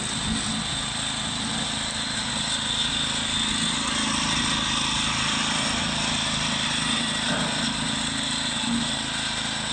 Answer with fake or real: real